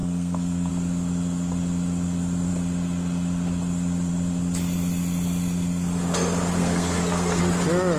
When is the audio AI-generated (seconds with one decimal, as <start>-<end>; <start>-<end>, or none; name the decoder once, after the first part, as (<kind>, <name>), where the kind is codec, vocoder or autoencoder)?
0.0-0.7 (codec, SNAC); 6.6-7.4